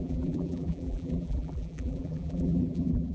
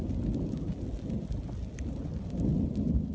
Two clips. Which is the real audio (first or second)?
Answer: second